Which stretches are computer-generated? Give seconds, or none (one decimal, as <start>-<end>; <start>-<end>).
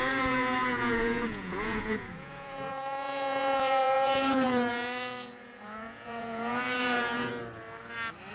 0.0-7.3